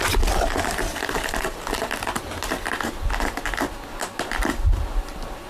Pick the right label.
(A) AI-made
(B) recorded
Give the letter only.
B